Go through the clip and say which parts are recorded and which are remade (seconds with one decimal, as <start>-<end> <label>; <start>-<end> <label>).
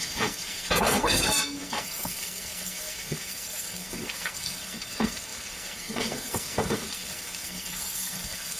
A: 0.0-8.6 remade